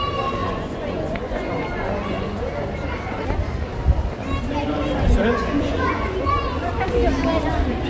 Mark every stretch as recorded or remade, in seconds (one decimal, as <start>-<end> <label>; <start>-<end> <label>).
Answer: 0.0-0.4 recorded; 0.4-2.4 remade; 2.4-5.1 recorded; 5.1-6.7 remade; 6.7-7.9 recorded